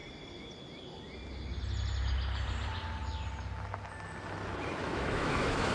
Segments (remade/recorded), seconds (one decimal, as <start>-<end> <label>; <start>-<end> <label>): 0.0-4.8 recorded; 4.8-5.7 remade